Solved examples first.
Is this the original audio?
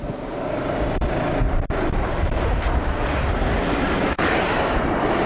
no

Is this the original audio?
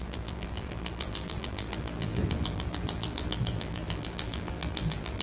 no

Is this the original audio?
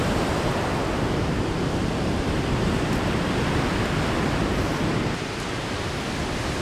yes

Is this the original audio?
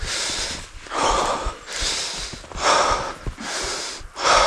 yes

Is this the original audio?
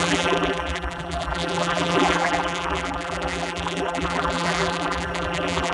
no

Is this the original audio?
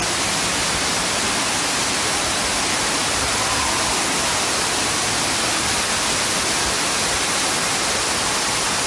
yes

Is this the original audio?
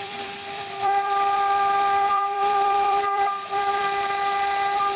no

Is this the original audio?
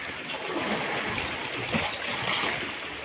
yes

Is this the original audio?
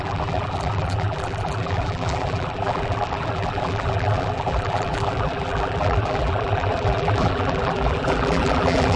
no